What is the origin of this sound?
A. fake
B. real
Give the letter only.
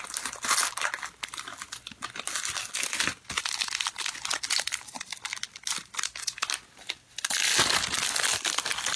B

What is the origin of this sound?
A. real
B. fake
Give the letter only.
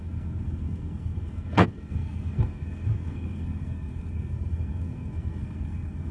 B